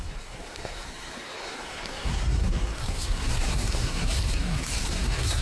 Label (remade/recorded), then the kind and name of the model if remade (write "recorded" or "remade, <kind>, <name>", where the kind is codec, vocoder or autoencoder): remade, codec, SNAC